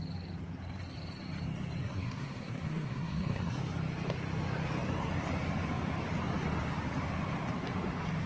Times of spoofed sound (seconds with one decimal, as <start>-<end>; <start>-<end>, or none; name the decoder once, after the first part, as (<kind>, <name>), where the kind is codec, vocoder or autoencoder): 1.8-3.6 (codec, SNAC)